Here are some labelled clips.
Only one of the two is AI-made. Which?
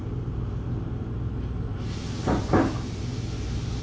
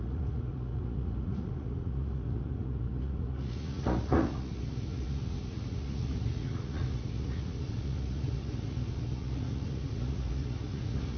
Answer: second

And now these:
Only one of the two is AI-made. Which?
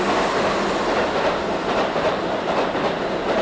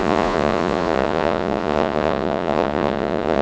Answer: second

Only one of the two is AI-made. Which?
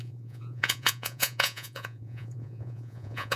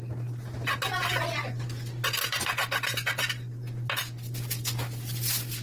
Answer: first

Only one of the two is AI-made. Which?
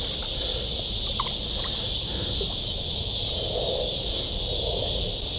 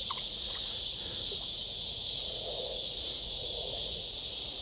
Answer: second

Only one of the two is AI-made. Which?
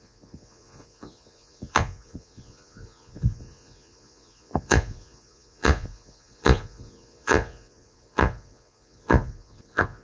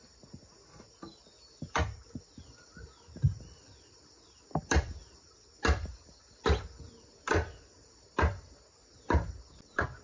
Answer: first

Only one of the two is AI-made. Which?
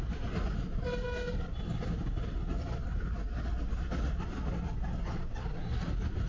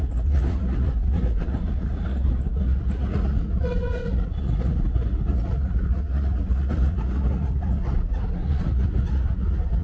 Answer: second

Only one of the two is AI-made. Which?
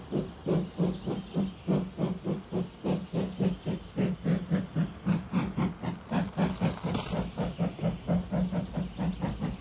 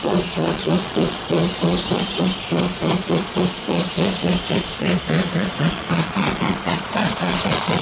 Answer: second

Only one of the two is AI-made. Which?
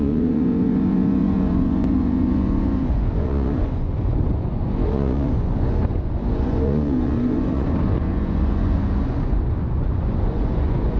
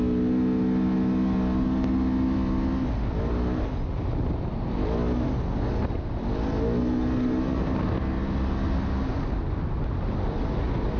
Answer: first